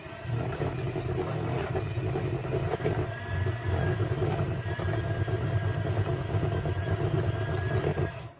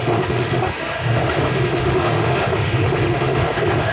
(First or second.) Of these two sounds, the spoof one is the second